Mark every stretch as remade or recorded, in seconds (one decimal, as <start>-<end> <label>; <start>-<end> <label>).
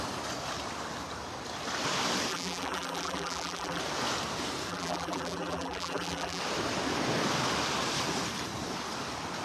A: 0.0-2.3 recorded; 2.3-3.8 remade; 3.8-4.7 recorded; 4.7-6.4 remade; 6.4-9.4 recorded